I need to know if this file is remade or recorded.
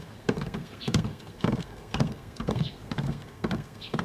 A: remade